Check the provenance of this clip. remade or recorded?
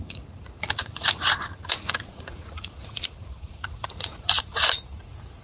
remade